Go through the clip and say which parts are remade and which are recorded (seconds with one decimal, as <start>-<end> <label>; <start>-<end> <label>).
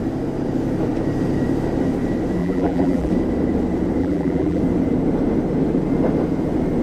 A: 0.0-2.4 recorded; 2.4-3.1 remade; 3.1-4.0 recorded; 4.0-4.6 remade; 4.6-6.8 recorded